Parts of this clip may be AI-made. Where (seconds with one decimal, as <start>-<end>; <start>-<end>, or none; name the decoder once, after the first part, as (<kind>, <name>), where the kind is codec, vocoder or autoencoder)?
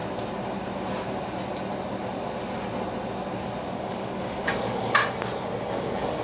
3.7-5.0 (codec, DAC); 5.7-6.2